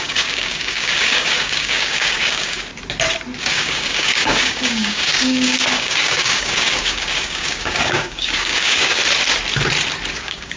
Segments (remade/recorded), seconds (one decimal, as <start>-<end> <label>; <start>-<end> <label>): 0.0-2.7 remade; 2.7-3.4 recorded; 3.4-9.0 remade; 9.0-10.1 recorded; 10.1-10.6 remade